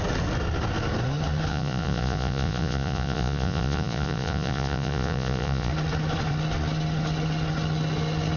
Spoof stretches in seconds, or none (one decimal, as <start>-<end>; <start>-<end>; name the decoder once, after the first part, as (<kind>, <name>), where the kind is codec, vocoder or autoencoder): 1.5-5.7 (vocoder, Vocos)

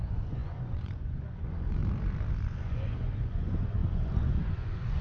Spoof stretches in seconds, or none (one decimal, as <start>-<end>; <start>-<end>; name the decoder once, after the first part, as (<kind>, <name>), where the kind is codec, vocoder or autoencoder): 0.0-1.8 (vocoder, Vocos); 2.5-5.0

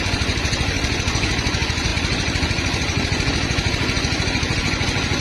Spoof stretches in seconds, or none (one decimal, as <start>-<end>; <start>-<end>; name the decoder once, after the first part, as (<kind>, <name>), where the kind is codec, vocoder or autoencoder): 0.0-5.2 (vocoder, Vocos)

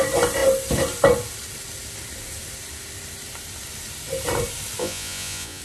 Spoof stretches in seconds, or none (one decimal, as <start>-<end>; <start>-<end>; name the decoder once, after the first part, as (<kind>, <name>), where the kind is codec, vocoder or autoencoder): 4.8-5.6 (vocoder, Vocos)

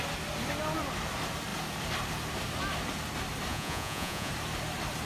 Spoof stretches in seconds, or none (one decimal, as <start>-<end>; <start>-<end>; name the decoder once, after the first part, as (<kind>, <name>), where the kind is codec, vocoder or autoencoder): 3.5-4.3 (vocoder, Vocos)

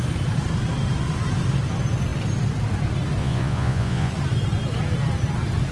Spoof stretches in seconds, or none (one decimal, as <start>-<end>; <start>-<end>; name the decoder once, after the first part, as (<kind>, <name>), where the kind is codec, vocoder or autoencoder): 3.2-4.1 (vocoder, Vocos)

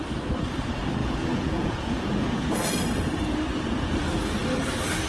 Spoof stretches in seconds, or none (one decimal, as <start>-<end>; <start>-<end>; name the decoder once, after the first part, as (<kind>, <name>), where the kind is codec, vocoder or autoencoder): 1.0-2.6 (vocoder, Vocos)